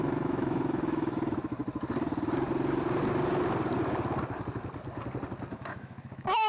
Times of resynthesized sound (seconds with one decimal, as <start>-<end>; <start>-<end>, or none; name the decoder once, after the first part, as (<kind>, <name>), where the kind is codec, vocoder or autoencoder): 0.0-1.6 (autoencoder, DAC-VAE); 5.5-6.5

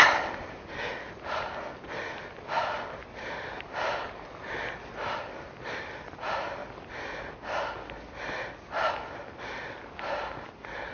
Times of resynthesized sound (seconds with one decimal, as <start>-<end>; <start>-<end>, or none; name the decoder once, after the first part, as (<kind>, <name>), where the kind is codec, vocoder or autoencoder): none

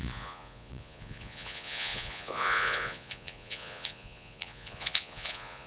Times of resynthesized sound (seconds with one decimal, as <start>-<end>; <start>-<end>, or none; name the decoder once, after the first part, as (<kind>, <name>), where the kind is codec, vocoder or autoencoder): 0.0-5.7 (vocoder, Vocos)

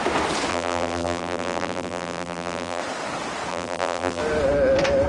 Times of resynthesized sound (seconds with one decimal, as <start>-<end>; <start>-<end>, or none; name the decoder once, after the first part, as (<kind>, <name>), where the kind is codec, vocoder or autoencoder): 0.5-2.8 (vocoder, BigVGAN v2); 3.5-4.2

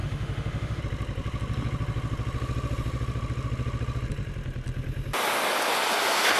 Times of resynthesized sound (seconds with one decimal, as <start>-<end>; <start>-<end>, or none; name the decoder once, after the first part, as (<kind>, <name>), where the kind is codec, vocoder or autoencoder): 0.0-0.8 (autoencoder, DAC-VAE)